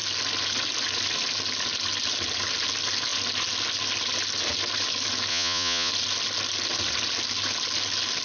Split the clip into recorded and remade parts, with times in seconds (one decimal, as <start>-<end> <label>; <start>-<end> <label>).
0.0-5.3 recorded; 5.3-5.9 remade; 5.9-8.2 recorded